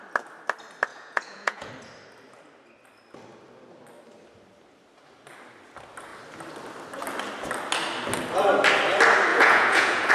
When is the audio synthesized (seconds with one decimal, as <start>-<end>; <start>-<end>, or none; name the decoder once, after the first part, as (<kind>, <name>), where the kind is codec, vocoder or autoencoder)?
0.9-1.7 (vocoder, Vocos); 9.3-10.1